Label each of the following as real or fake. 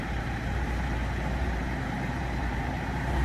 fake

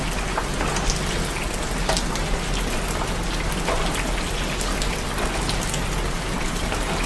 real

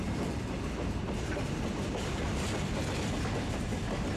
real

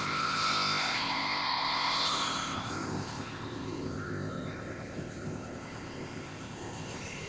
fake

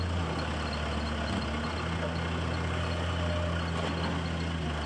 real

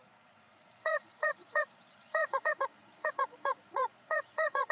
fake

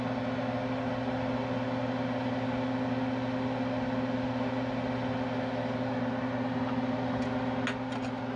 real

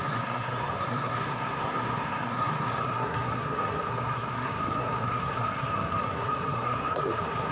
fake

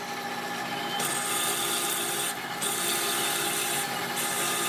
real